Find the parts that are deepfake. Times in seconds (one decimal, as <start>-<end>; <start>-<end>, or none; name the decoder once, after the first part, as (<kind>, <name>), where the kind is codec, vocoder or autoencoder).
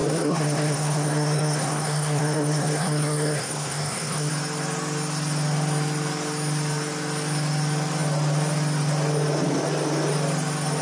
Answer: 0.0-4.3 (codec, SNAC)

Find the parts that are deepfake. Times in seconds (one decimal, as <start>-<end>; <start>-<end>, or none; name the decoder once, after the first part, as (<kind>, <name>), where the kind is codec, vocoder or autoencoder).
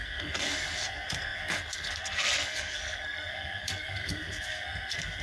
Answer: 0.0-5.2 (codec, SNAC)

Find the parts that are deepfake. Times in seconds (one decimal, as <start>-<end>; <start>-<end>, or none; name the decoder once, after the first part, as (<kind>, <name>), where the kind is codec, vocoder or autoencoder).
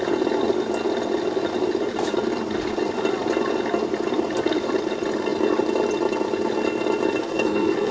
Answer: 7.2-7.9 (codec, SNAC)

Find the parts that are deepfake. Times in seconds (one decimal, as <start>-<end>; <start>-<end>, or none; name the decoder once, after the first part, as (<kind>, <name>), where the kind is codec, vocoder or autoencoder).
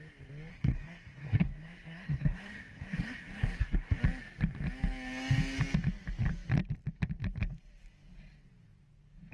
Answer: 0.5-4.0 (codec, SNAC)